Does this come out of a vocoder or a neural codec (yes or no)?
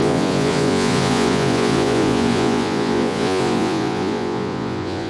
yes